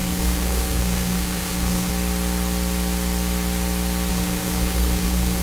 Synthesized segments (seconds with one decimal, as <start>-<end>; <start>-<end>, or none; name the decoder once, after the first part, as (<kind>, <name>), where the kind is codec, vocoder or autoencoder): 0.0-1.9 (codec, SNAC); 4.1-5.4